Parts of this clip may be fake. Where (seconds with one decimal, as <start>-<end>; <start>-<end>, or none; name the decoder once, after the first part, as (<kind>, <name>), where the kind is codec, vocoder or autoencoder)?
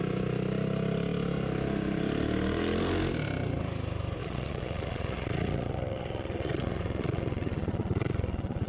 4.2-8.7 (vocoder, Vocos)